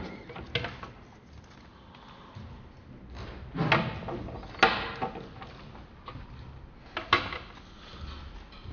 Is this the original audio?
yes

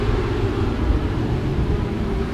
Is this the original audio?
yes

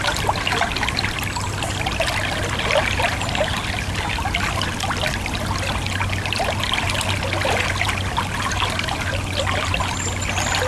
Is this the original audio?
yes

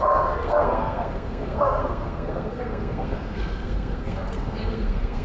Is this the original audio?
no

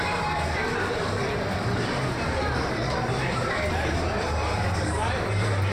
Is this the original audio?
no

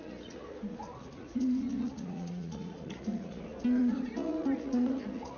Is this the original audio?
no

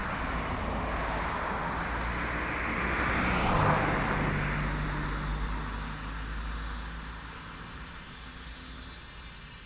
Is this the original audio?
yes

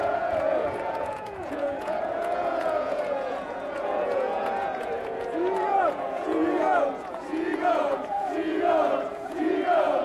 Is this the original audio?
no